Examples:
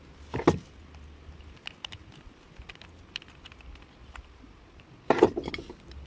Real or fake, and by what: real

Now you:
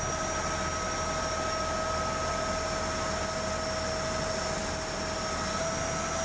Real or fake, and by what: real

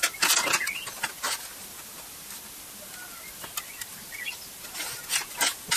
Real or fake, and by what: real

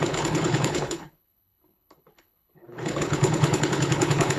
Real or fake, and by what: fake, codec, HILCodec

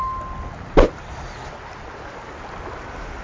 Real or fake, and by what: real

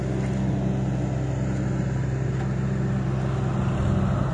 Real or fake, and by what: real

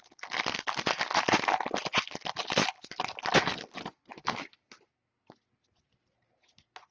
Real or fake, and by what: real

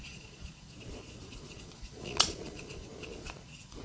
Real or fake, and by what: fake, vocoder, Vocos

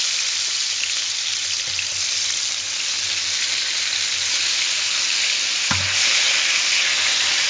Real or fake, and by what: real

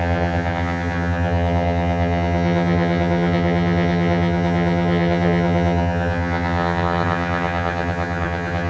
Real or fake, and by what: fake, vocoder, HiFi-GAN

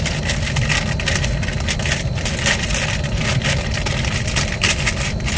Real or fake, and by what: real